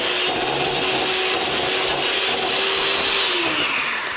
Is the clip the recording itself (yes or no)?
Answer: yes